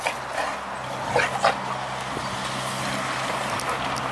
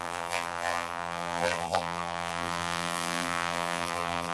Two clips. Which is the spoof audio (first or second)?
second